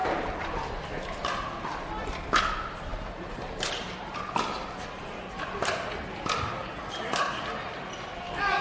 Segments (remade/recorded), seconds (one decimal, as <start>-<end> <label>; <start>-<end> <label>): 0.0-0.7 remade; 0.7-2.9 recorded; 2.9-4.2 remade; 4.2-8.6 recorded